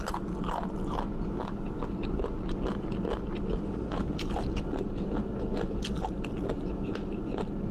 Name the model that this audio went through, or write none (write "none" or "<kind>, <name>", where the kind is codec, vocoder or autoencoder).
none